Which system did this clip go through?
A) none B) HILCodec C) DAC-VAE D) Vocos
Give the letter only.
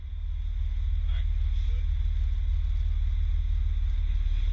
A